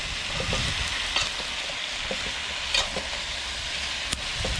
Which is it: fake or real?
real